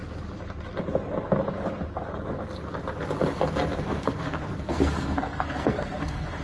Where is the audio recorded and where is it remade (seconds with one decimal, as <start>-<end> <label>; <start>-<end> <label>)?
0.0-3.8 recorded; 3.8-6.4 remade

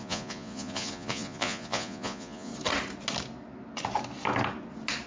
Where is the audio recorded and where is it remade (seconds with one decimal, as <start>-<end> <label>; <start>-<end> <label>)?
0.0-2.5 remade; 2.5-5.1 recorded